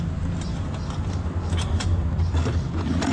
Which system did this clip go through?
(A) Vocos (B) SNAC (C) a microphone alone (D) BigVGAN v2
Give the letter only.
C